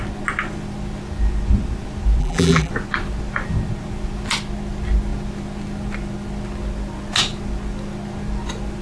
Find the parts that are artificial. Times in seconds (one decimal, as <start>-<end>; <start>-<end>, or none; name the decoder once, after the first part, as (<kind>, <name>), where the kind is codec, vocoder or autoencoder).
2.2-2.7 (vocoder, BigVGAN v2)